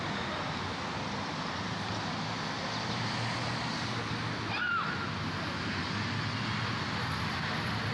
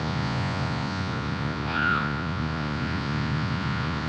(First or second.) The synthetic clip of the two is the second